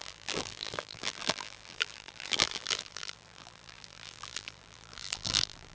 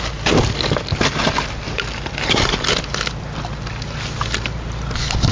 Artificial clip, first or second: first